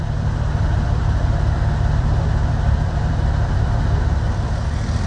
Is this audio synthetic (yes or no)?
yes